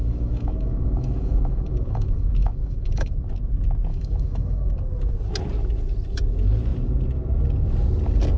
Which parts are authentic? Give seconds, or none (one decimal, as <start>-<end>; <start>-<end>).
3.1-3.9; 4.7-8.4